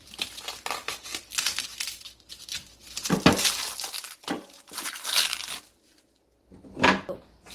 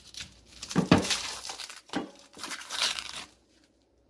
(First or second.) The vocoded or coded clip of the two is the second